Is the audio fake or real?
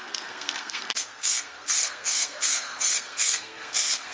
fake